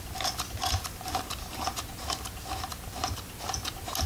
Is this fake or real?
real